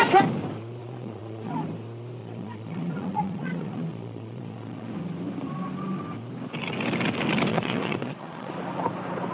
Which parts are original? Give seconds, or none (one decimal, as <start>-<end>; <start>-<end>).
0.0-0.8; 1.5-2.2; 4.9-7.5; 8.5-9.3